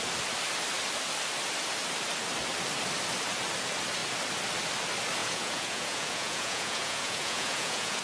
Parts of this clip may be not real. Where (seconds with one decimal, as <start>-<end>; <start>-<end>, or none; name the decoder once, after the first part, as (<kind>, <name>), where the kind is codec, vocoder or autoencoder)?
5.2-8.0 (vocoder, Vocos)